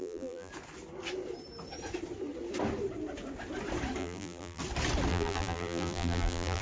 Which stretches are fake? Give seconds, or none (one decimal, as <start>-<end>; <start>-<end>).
0.0-0.5; 4.0-4.6; 5.1-6.6